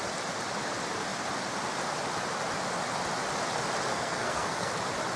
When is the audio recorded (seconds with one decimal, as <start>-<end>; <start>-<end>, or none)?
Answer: 0.0-3.9; 4.7-5.2

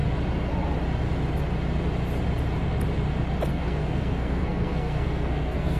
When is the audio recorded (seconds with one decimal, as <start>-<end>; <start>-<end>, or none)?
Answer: 0.0-3.5